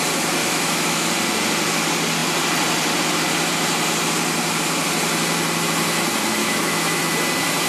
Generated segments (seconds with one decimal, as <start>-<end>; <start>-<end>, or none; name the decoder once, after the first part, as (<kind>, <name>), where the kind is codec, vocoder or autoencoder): 0.4-1.1 (autoencoder, DAC-VAE); 6.4-7.0